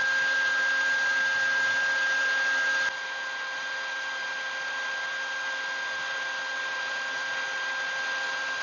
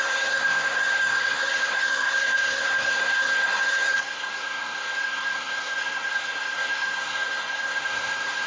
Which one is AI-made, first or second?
second